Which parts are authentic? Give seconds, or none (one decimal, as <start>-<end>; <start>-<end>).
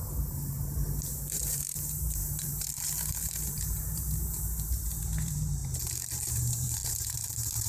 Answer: 5.6-6.3